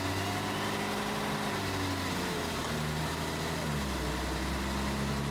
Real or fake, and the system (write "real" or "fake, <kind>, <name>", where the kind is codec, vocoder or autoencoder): real